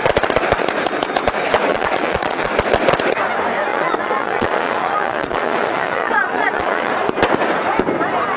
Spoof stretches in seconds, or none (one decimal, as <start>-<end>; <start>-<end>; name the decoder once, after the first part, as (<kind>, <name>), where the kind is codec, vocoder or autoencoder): 1.7-2.5 (vocoder, Vocos); 3.7-6.9